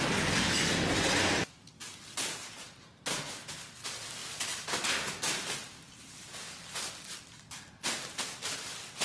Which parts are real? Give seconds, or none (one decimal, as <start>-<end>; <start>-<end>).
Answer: 0.0-9.0